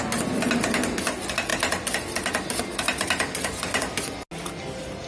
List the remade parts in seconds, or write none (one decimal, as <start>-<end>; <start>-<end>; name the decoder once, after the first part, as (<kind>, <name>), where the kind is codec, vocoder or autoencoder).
none